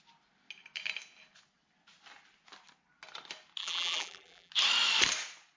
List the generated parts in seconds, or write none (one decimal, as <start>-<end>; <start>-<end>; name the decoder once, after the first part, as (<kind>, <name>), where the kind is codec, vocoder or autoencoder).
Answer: 3.6-4.5 (vocoder, BigVGAN v2)